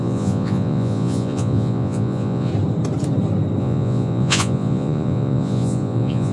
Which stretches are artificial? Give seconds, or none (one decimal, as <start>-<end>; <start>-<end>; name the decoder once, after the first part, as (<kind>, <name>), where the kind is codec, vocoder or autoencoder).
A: 0.0-2.5 (vocoder, Vocos); 3.6-6.3